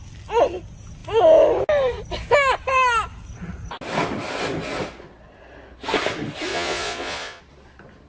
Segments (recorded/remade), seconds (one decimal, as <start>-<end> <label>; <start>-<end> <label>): 0.0-6.5 recorded; 6.5-7.4 remade; 7.4-8.1 recorded